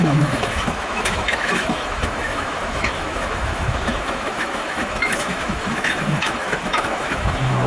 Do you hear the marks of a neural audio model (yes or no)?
yes